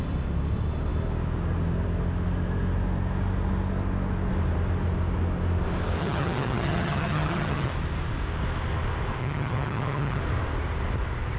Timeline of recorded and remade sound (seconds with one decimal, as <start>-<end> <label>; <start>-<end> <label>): 0.0-6.0 recorded; 6.0-7.7 remade; 7.7-9.2 recorded; 9.2-10.2 remade; 10.2-11.4 recorded